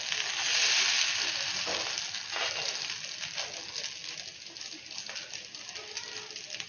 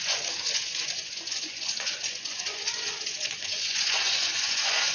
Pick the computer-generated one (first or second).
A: second